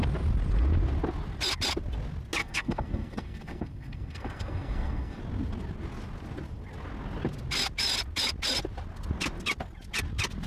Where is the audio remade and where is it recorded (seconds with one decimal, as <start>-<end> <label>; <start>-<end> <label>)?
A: 0.0-2.4 recorded; 2.4-5.2 remade; 5.2-10.5 recorded